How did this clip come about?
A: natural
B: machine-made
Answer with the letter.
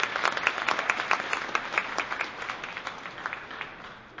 A